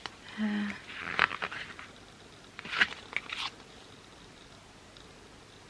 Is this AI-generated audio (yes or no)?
no